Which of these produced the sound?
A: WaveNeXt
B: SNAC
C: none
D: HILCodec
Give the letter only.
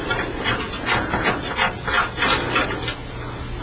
C